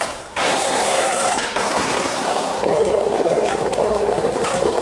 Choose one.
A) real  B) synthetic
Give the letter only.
B